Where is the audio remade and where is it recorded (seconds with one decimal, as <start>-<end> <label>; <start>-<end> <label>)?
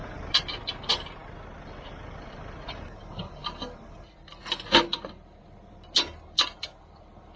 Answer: 0.0-7.4 recorded